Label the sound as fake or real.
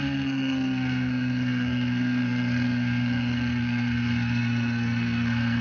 fake